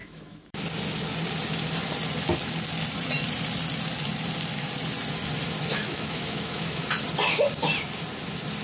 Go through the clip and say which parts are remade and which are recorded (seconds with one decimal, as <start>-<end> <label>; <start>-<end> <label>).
0.0-0.6 remade; 0.6-5.7 recorded; 5.7-6.8 remade; 6.8-8.6 recorded